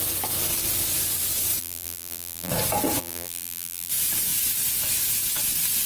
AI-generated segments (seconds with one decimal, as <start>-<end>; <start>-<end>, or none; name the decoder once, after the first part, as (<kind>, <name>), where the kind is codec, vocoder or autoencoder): 1.6-2.5 (vocoder, BigVGAN v2); 3.0-3.9